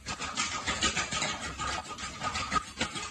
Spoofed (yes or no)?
no